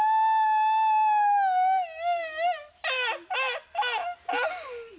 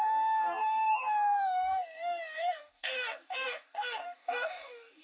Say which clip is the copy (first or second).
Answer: second